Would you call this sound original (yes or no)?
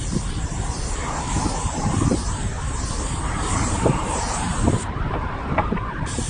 no